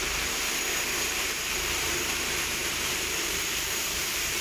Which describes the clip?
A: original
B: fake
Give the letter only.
B